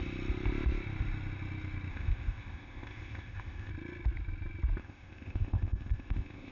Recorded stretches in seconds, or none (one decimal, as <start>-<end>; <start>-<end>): 0.0-1.9; 3.7-4.8